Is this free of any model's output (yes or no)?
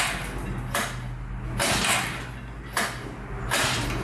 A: yes